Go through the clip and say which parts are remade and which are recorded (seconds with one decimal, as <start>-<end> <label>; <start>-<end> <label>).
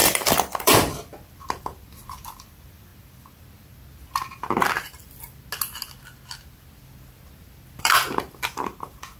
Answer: 0.0-2.9 remade; 2.9-7.8 recorded; 7.8-9.2 remade